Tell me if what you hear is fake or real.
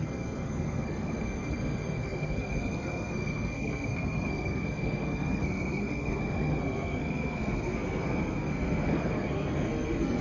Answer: fake